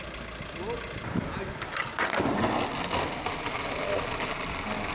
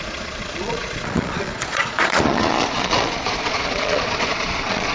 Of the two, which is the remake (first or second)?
second